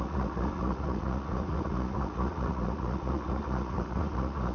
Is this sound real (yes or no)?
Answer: no